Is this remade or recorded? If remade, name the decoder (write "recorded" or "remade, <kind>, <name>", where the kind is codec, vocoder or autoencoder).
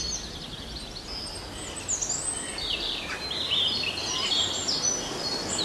recorded